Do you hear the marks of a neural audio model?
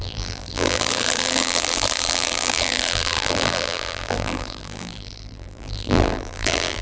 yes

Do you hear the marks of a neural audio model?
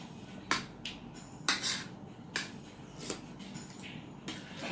no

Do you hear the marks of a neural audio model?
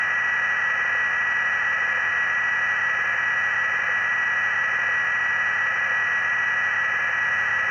no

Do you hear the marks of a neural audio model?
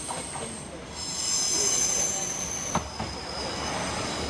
no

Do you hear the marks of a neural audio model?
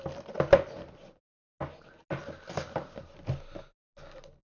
no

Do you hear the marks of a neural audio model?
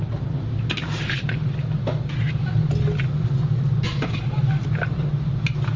no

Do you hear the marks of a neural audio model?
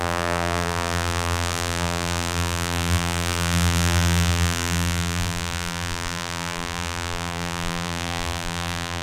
yes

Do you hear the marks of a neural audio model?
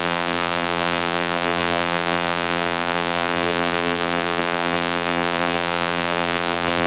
yes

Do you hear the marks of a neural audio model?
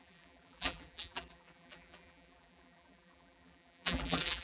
yes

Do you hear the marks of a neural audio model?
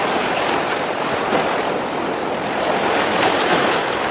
no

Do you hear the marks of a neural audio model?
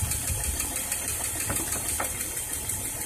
yes